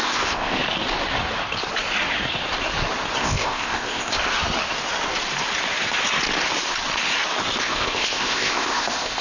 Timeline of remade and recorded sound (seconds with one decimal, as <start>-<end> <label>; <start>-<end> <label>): 0.0-0.6 remade; 0.6-3.2 recorded; 3.2-4.2 remade; 4.2-7.6 recorded; 7.6-9.2 remade